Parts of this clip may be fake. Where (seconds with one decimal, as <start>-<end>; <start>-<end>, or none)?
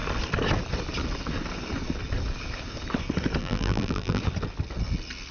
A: 3.4-4.2